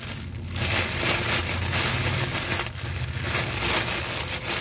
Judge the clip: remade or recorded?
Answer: recorded